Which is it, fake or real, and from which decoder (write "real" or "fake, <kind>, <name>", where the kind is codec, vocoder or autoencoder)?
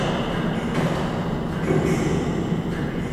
real